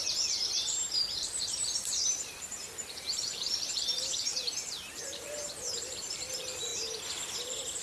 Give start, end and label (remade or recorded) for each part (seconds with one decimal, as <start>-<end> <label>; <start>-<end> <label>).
0.0-6.7 remade; 6.7-7.8 recorded